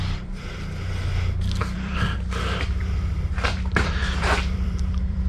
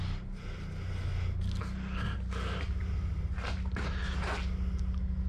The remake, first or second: first